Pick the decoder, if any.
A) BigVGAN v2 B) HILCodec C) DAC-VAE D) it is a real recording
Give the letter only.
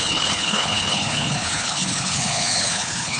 B